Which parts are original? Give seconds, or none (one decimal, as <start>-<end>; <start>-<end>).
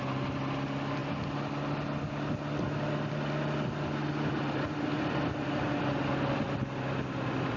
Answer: 0.0-7.6